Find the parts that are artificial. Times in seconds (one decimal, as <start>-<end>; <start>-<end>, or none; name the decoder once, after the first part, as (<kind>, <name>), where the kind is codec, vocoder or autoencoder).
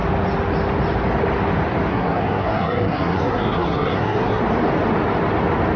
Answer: 1.9-4.4 (codec, SNAC)